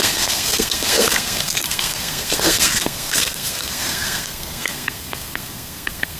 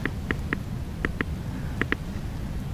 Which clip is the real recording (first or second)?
second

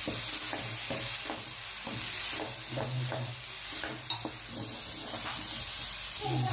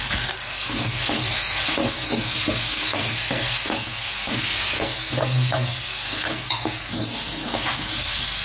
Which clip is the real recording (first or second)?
first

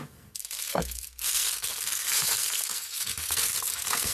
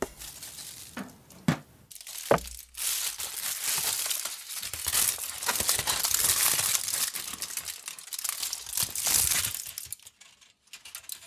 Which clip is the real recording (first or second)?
second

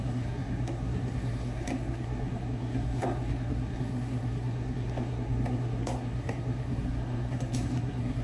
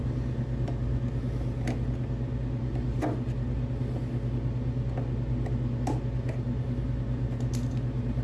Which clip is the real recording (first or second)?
second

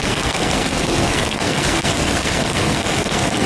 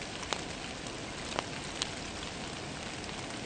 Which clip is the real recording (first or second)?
second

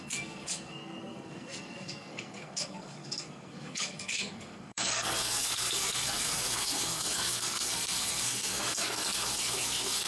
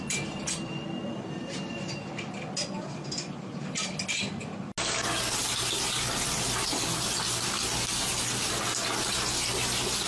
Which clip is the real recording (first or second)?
second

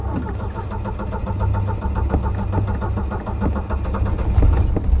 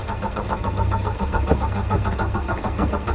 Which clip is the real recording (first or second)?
first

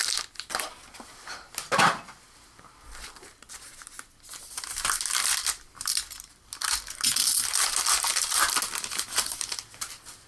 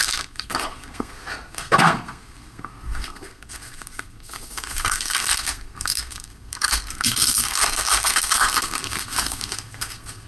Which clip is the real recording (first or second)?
first